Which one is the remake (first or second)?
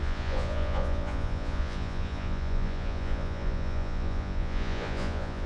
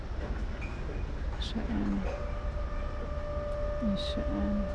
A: first